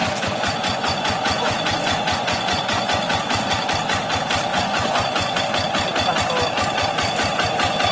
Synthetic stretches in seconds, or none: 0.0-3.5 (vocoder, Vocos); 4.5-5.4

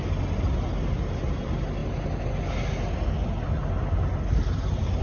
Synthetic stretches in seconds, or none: none